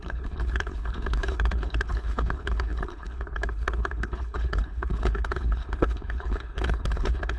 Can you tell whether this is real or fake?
fake